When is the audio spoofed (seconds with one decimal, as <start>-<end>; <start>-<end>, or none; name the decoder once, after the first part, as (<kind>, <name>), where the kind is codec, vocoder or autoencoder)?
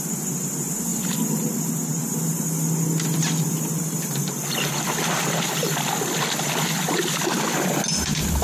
none